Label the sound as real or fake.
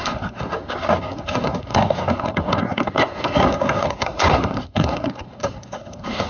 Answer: fake